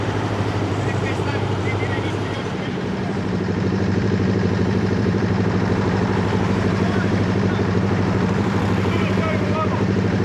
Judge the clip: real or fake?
fake